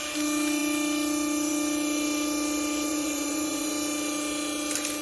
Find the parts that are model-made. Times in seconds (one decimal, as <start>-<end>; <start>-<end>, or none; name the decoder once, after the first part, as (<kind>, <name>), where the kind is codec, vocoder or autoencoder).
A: 2.9-3.7 (vocoder, Vocos)